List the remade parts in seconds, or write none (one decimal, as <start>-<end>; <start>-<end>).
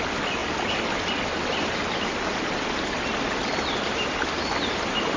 none